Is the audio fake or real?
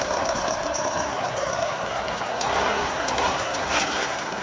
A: fake